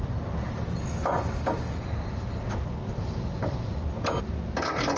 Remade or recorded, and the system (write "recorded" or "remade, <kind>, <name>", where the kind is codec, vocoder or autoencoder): recorded